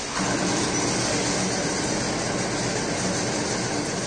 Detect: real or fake real